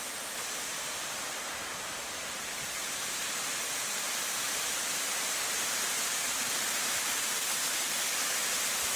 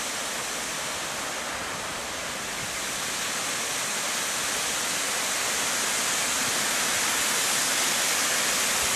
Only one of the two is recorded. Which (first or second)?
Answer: second